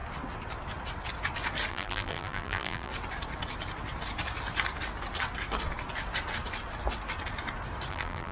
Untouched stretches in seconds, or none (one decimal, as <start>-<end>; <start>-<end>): 0.0-1.7; 2.9-7.9